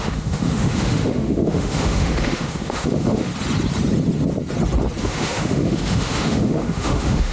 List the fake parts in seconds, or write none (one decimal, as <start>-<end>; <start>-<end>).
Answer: 0.0-3.3; 5.0-7.3